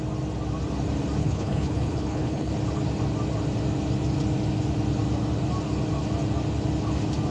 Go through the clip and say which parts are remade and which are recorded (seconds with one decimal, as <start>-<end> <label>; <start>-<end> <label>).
0.0-1.2 recorded; 1.2-2.5 remade; 2.5-7.3 recorded